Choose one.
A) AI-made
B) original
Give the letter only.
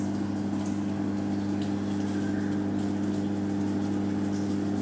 B